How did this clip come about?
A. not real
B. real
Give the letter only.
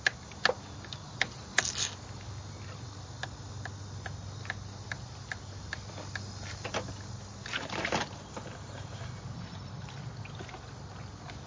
B